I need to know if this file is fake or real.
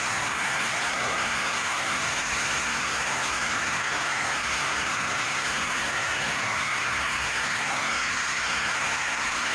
fake